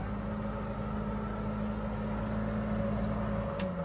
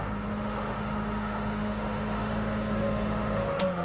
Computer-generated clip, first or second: second